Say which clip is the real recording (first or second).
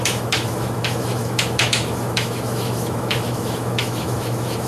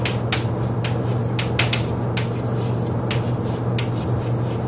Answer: second